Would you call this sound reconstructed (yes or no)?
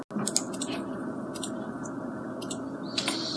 no